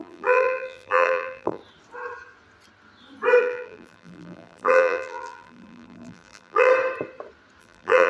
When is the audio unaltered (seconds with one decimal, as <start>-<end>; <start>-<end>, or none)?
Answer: 1.6-3.4; 6.7-7.6